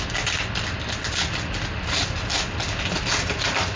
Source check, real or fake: real